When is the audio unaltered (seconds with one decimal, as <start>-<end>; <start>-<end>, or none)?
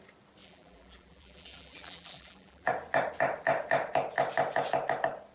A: 0.0-0.4; 2.7-5.3